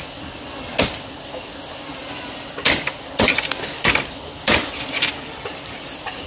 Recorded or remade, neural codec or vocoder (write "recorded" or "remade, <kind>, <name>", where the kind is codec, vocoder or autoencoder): recorded